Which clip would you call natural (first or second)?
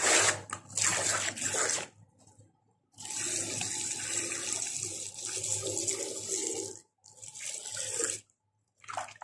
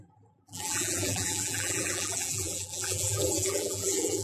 first